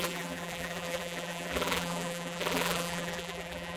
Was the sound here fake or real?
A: fake